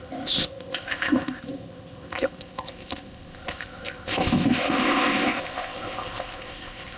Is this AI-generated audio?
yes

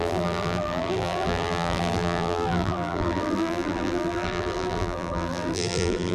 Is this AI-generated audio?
yes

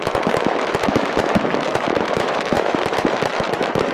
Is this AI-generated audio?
yes